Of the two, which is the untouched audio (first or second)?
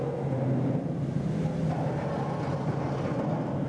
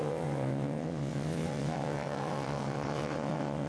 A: first